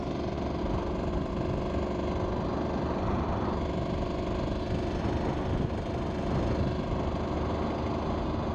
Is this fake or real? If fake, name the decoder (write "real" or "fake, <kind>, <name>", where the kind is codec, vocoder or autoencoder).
real